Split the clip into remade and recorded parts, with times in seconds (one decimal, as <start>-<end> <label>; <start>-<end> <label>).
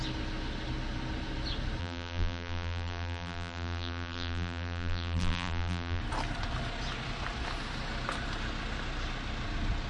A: 0.0-1.8 recorded; 1.8-6.0 remade; 6.0-9.9 recorded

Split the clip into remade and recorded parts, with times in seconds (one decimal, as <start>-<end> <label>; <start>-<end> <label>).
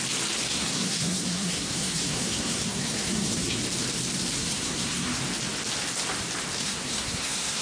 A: 0.0-0.5 recorded; 0.5-3.6 remade; 3.6-4.4 recorded; 4.4-5.2 remade; 5.2-6.6 recorded; 6.6-7.6 remade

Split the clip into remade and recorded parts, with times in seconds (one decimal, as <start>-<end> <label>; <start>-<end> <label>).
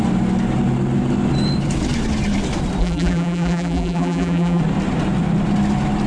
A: 0.0-2.8 recorded; 2.8-4.6 remade; 4.6-6.1 recorded